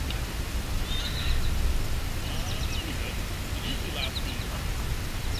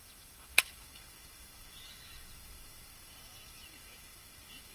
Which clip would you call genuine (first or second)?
first